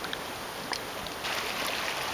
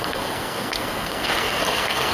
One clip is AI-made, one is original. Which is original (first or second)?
first